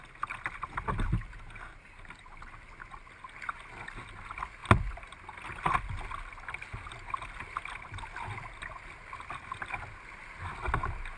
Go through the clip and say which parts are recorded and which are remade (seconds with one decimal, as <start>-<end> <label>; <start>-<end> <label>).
0.0-11.2 recorded